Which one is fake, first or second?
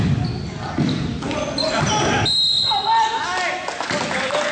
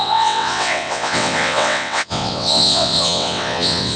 second